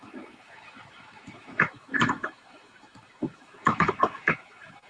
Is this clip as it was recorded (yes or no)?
no